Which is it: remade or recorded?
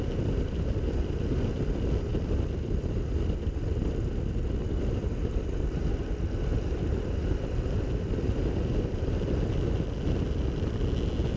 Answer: recorded